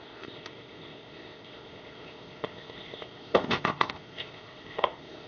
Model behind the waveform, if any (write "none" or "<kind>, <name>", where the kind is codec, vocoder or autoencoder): codec, ZipCodec